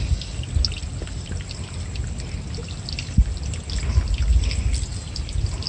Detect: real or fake real